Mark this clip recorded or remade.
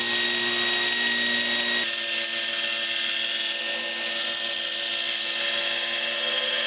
recorded